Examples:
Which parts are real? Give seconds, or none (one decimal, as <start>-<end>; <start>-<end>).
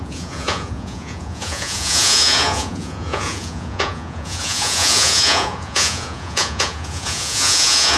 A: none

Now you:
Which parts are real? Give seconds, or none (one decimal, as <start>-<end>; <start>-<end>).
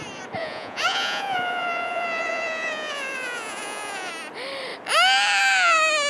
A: 0.0-0.4; 4.1-6.1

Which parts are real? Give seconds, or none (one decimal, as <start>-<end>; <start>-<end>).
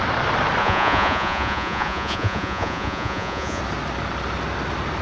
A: 0.0-0.6; 3.6-5.0